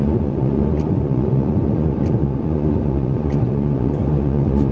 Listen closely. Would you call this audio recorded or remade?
remade